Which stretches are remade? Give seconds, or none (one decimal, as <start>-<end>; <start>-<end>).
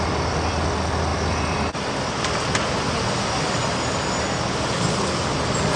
none